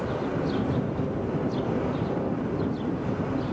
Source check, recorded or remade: recorded